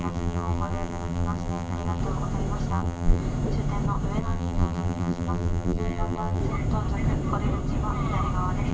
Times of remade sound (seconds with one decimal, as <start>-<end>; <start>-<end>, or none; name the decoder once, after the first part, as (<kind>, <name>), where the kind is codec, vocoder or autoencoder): 0.0-2.0 (vocoder, BigVGAN v2); 2.7-3.2; 4.2-6.4